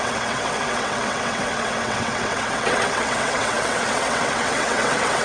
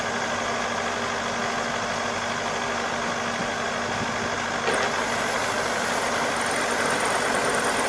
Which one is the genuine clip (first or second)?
second